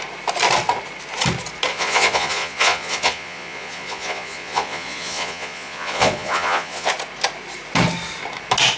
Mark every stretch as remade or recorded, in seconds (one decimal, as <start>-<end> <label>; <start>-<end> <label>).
0.0-1.7 recorded; 1.7-6.9 remade; 6.9-8.8 recorded